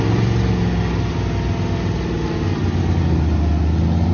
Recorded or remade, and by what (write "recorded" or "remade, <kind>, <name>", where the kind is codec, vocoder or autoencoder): recorded